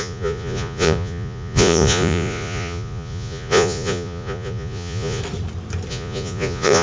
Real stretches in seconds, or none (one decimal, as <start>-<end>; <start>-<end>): 5.2-5.9

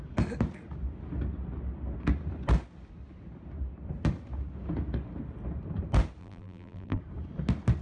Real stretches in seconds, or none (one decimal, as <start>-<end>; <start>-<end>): 0.0-6.2; 7.0-7.8

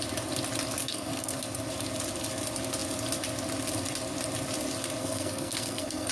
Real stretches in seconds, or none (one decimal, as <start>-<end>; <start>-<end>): 0.0-0.8; 1.4-5.0